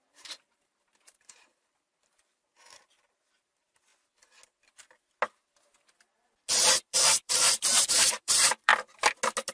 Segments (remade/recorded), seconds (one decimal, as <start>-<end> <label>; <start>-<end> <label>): 0.0-3.9 remade; 3.9-7.0 recorded; 7.0-8.7 remade; 8.7-9.5 recorded